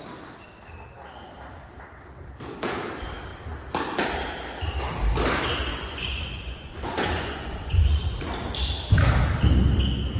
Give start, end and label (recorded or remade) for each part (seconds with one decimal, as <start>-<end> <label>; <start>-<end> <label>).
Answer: 0.0-5.7 recorded; 5.7-8.2 remade; 8.2-10.2 recorded